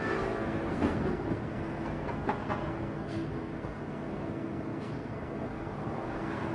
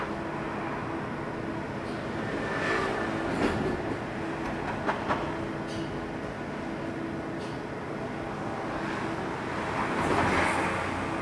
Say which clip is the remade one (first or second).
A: first